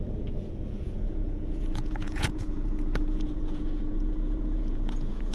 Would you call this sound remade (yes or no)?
yes